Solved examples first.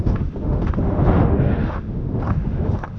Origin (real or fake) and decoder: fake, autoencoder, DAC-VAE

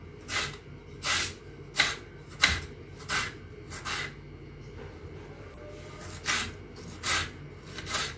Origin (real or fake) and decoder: real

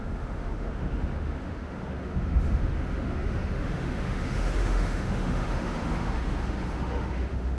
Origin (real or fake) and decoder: fake, autoencoder, DAC-VAE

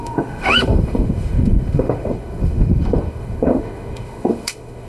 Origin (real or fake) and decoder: fake, autoencoder, DAC-VAE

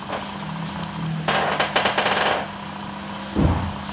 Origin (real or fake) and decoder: real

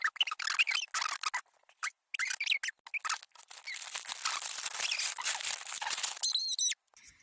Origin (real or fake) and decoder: real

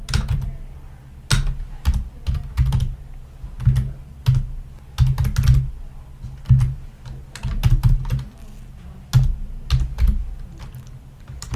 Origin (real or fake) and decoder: real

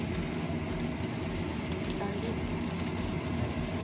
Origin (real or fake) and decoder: real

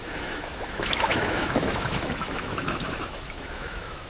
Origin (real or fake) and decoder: fake, autoencoder, DAC-VAE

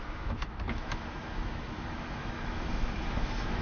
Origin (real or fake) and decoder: fake, autoencoder, DAC-VAE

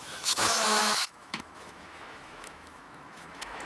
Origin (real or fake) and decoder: fake, autoencoder, DAC-VAE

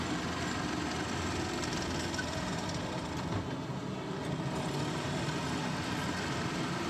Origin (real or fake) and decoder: real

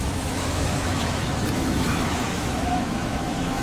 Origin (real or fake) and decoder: fake, autoencoder, DAC-VAE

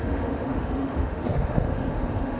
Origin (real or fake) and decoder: fake, autoencoder, DAC-VAE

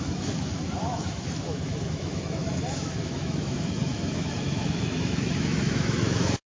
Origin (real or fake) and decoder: fake, autoencoder, DAC-VAE